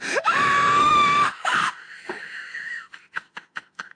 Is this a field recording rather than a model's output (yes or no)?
no